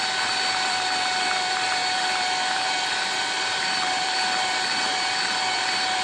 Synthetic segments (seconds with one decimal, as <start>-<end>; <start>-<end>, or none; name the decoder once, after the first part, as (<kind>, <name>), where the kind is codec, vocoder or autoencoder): 0.0-6.0 (vocoder, BigVGAN v2)